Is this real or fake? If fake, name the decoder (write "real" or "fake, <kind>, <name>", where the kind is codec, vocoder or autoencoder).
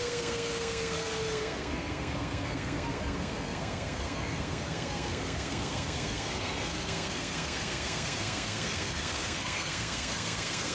fake, codec, SNAC